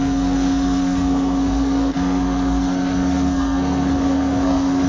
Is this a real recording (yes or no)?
no